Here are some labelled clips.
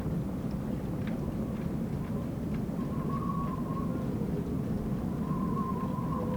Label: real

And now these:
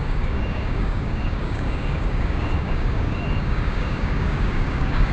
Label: fake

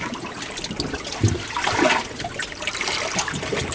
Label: real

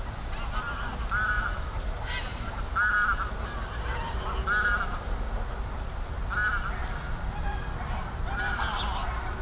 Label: real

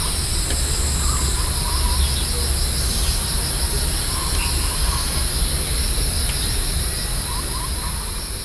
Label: real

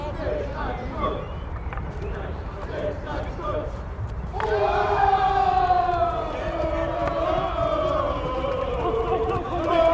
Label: fake